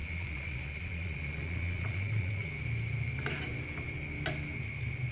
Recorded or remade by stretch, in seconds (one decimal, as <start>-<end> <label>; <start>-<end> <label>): 0.0-2.5 remade; 2.5-5.1 recorded